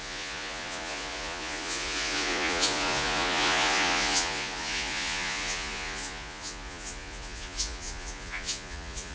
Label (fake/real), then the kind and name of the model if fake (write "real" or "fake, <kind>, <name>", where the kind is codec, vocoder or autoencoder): fake, vocoder, Vocos